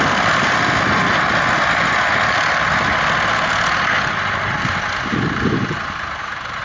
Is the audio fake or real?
real